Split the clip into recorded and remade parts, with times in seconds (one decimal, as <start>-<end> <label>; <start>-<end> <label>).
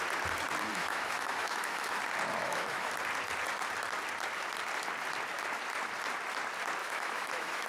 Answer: 0.0-0.7 recorded; 0.7-2.0 remade; 2.0-2.4 recorded; 2.4-2.9 remade; 2.9-6.8 recorded; 6.8-7.7 remade